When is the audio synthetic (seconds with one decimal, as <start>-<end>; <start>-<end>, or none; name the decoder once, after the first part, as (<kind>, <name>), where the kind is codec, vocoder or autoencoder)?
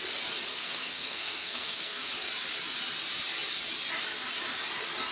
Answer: 0.5-2.1 (codec, SNAC)